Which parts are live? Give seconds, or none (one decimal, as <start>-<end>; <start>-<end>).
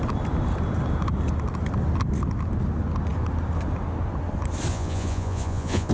0.0-4.7